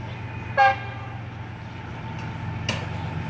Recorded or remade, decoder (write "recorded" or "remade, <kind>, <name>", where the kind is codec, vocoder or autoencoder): recorded